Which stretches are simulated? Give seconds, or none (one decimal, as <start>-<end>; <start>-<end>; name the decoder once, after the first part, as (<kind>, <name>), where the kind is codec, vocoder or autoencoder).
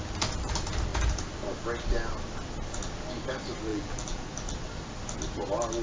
3.7-4.2 (vocoder, BigVGAN v2)